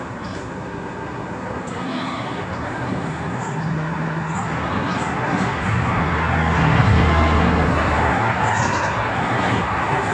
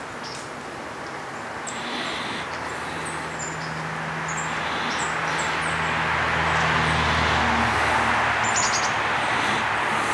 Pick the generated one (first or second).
first